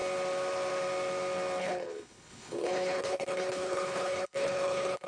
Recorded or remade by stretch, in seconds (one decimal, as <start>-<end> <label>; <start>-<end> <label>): 0.0-1.6 recorded; 1.6-5.1 remade